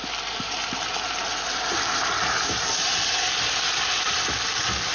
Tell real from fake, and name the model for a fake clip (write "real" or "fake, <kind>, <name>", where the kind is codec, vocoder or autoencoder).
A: real